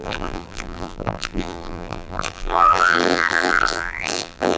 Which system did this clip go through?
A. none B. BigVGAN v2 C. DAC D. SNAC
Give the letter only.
B